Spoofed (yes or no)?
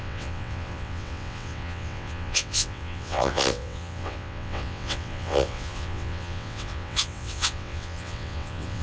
yes